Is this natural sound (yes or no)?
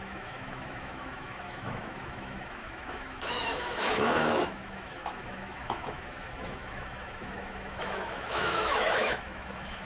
no